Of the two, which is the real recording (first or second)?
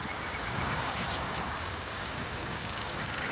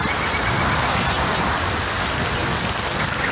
second